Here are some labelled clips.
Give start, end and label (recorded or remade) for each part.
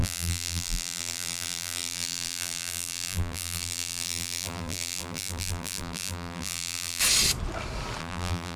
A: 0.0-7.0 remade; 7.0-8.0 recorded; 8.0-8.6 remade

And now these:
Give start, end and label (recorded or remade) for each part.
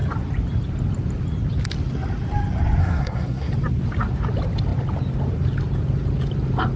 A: 0.0-2.8 recorded; 2.8-3.5 remade; 3.5-6.8 recorded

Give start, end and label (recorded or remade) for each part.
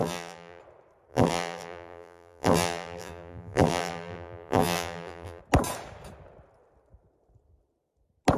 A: 0.0-0.6 remade; 0.6-1.1 recorded; 1.1-5.4 remade; 5.4-8.4 recorded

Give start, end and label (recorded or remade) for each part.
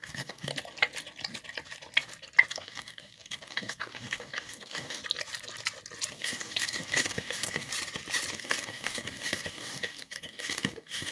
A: 0.0-0.5 remade; 0.5-2.5 recorded; 2.5-5.0 remade; 5.0-6.1 recorded; 6.1-7.7 remade; 7.7-8.3 recorded; 8.3-11.1 remade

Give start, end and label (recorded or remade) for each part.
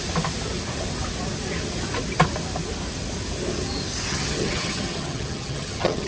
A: 0.0-4.1 recorded; 4.1-6.1 remade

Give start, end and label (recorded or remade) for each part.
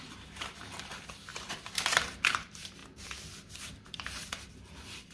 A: 0.0-2.8 remade; 2.8-3.5 recorded; 3.5-5.1 remade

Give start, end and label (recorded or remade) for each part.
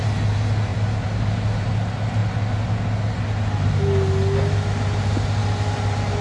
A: 0.0-6.2 recorded